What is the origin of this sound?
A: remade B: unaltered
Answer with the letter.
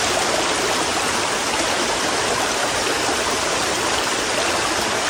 B